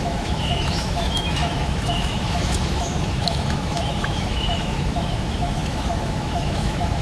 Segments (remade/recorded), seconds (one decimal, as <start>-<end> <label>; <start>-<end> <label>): 0.0-7.0 remade

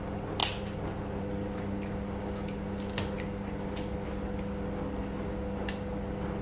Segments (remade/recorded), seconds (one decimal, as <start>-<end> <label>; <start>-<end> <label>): 0.0-6.4 recorded

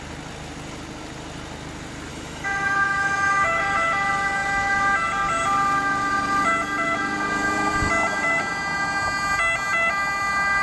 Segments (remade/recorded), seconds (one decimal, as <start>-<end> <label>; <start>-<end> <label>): 0.0-2.1 recorded; 2.1-3.6 remade; 3.6-10.6 recorded

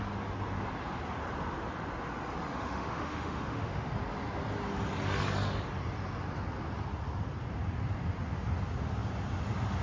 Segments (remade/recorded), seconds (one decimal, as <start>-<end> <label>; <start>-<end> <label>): 0.0-2.5 recorded; 2.5-3.9 remade; 3.9-9.8 recorded

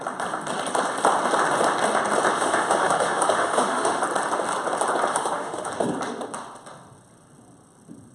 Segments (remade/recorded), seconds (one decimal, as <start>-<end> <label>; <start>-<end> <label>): 0.0-2.3 recorded; 2.3-4.0 remade; 4.0-5.1 recorded; 5.1-5.7 remade; 5.7-8.1 recorded

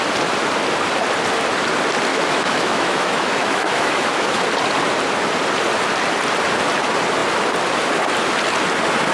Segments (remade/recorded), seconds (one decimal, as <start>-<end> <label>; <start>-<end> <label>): 0.0-2.1 recorded; 2.1-4.4 remade; 4.4-9.1 recorded